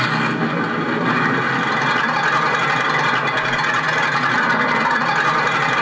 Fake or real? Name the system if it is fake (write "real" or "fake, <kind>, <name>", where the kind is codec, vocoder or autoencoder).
real